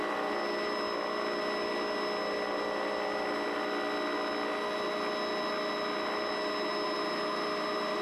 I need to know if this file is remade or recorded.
recorded